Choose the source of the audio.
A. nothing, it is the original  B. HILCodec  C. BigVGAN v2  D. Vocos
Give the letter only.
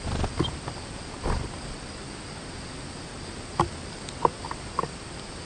A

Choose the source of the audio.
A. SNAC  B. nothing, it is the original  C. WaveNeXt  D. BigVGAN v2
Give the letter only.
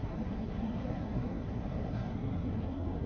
A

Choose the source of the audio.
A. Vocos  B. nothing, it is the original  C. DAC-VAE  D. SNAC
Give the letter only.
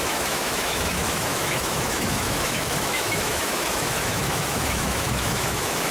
C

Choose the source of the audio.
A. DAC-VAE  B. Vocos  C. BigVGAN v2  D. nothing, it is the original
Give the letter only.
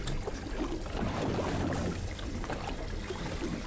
D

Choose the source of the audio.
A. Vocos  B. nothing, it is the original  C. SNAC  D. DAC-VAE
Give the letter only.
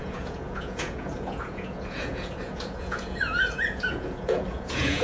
A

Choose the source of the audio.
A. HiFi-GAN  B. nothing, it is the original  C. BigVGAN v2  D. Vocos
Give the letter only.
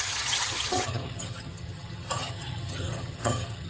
A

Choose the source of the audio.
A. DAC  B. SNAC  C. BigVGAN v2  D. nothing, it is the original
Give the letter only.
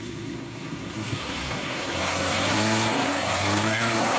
B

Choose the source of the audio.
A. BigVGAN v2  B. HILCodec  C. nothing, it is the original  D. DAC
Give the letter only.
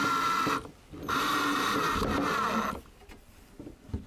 C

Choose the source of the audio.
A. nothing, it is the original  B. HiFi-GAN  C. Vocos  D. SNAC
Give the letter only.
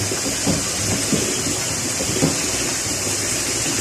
A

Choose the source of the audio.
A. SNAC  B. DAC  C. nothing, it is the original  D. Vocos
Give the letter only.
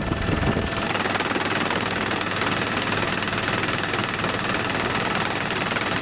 C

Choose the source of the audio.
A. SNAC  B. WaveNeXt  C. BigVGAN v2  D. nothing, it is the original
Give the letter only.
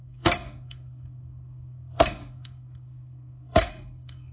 A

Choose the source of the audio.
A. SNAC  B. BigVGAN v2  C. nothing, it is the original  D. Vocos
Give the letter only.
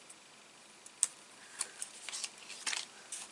C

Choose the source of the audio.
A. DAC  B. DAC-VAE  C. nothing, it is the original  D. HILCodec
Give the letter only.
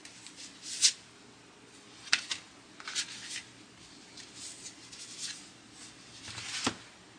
C